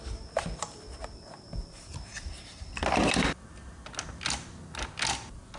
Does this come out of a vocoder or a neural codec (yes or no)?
no